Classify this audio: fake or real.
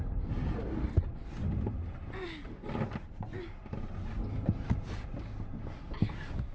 real